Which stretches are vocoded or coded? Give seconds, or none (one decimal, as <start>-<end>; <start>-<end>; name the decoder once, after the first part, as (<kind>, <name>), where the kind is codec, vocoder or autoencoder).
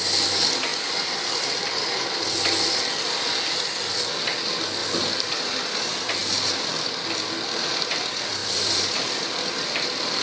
0.7-2.1 (vocoder, BigVGAN v2); 4.8-5.6; 8.4-10.2